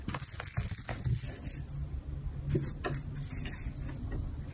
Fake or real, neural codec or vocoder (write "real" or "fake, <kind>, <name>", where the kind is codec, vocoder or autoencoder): real